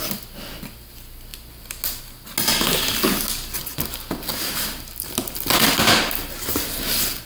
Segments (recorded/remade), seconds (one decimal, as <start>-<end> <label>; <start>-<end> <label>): 0.0-7.3 recorded